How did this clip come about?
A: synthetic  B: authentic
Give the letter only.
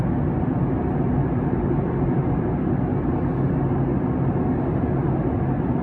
B